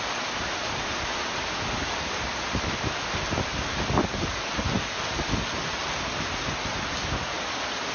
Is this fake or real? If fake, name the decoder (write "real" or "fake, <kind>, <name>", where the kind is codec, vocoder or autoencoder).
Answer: real